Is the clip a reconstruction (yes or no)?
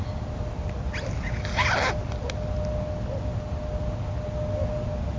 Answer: no